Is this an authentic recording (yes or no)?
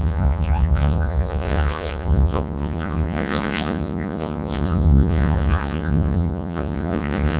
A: no